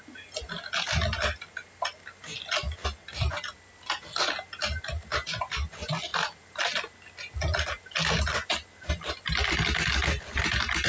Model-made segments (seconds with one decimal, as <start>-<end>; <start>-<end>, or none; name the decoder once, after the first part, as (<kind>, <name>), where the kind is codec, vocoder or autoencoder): none